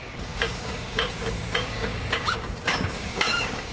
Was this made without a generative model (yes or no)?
no